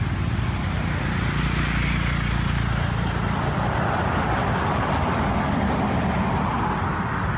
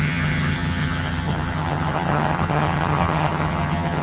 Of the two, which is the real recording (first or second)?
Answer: first